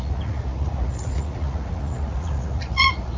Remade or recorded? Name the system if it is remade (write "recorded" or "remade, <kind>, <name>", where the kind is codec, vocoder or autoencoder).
remade, vocoder, Vocos